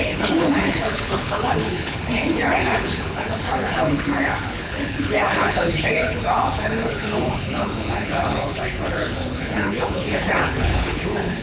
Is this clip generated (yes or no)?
yes